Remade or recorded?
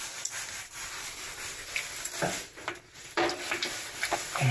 recorded